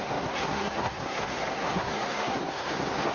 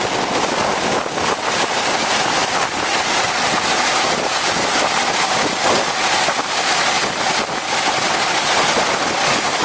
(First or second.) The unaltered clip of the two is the second